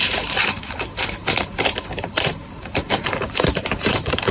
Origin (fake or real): fake